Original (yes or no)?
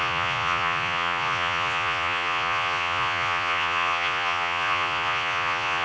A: no